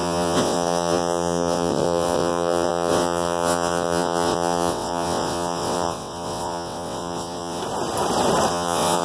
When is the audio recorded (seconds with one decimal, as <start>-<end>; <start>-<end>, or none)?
7.6-8.5